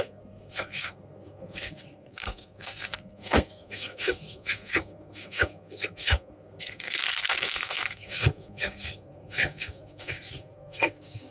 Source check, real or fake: fake